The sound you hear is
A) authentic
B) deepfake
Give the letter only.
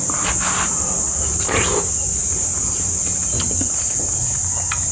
A